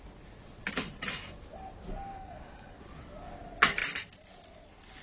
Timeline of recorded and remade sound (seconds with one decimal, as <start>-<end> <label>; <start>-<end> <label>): 0.0-2.1 recorded; 2.1-2.8 remade; 2.8-5.0 recorded